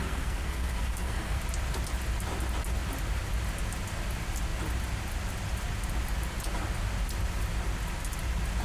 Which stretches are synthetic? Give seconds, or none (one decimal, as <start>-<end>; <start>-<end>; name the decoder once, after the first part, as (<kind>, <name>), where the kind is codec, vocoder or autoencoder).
0.0-1.4 (codec, SNAC)